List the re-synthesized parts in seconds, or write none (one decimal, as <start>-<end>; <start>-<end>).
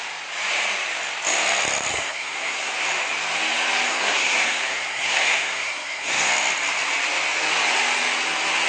1.9-2.7; 3.9-6.3